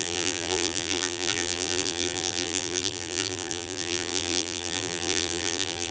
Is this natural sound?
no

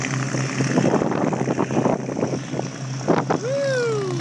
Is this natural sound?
yes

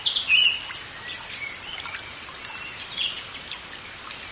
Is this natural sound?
no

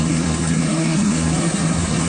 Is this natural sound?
no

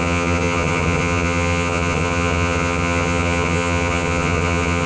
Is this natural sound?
no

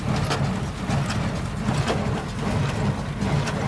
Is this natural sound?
yes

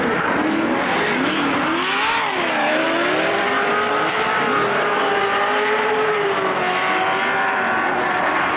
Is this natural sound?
yes